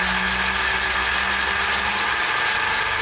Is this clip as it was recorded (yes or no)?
yes